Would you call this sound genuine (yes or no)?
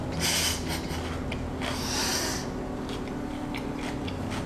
yes